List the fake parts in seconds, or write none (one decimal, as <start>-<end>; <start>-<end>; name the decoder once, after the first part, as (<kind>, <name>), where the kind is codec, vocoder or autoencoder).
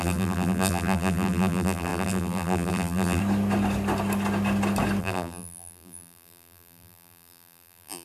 0.0-3.2 (vocoder, BigVGAN v2); 5.0-8.0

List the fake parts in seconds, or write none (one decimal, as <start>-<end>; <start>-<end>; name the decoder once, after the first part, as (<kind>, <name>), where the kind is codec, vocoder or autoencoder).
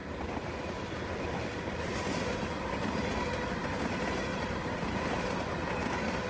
4.3-5.2 (vocoder, BigVGAN v2)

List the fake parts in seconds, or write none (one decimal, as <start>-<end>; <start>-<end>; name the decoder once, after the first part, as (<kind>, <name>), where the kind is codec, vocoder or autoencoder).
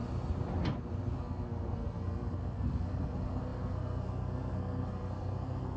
1.2-5.8 (codec, SNAC)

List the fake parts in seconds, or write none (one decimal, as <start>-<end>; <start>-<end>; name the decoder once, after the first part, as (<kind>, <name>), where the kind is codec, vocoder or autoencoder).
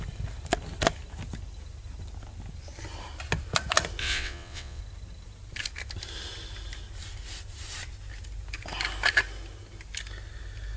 4.0-4.8 (vocoder, WaveNeXt)